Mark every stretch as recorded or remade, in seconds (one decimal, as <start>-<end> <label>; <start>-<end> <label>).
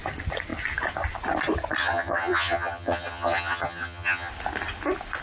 0.0-1.8 recorded; 1.8-4.3 remade; 4.3-5.2 recorded